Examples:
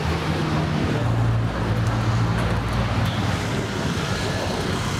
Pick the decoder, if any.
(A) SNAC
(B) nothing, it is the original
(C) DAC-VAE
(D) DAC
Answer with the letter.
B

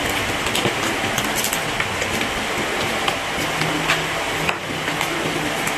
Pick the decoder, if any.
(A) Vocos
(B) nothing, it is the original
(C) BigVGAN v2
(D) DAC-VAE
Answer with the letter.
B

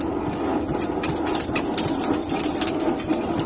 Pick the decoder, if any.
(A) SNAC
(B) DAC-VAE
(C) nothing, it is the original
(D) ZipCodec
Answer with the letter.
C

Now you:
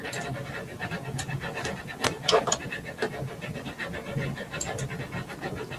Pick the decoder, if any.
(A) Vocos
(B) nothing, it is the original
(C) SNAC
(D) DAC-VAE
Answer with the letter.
B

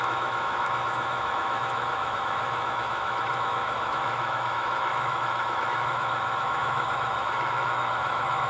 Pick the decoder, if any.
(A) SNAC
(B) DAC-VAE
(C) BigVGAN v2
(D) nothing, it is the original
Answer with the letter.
B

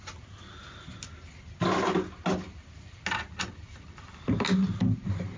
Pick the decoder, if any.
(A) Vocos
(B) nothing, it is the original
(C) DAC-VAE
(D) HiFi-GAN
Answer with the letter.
B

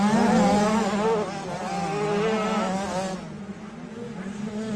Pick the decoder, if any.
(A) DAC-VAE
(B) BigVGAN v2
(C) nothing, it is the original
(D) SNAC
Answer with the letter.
C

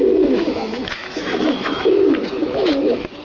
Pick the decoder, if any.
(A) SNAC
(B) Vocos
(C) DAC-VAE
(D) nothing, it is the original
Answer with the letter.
C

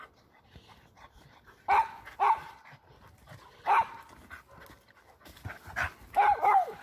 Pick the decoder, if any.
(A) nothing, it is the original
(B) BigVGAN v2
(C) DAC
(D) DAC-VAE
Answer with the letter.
A